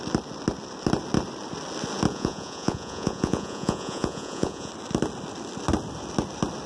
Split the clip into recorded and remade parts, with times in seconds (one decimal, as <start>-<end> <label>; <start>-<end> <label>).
0.0-2.1 recorded; 2.1-4.7 remade; 4.7-6.7 recorded